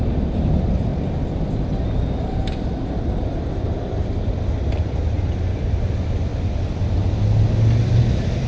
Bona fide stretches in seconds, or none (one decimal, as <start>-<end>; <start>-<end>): 0.9-2.2; 6.3-8.0